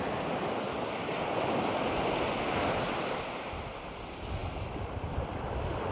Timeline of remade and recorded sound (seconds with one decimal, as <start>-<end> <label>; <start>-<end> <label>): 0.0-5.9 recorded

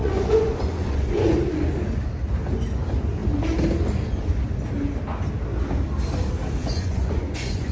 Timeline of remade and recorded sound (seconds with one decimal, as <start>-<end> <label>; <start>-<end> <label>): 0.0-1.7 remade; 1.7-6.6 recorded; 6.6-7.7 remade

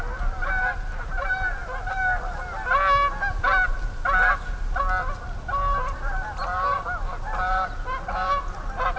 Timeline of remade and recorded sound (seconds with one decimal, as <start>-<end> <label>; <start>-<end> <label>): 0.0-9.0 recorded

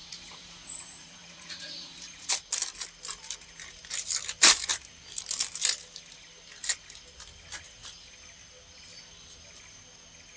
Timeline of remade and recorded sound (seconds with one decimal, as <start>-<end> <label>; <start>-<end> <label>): 0.0-2.3 remade; 2.3-10.4 recorded